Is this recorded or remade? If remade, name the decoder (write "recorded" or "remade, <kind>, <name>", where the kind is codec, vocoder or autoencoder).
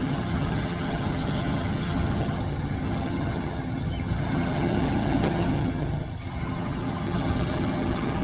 remade, vocoder, HiFi-GAN